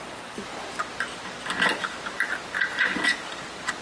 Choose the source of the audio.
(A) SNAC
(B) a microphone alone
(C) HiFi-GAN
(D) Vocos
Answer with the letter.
B